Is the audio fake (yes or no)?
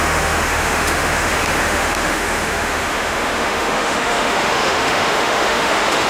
yes